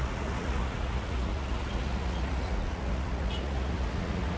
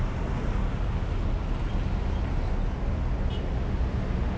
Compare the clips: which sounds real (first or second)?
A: second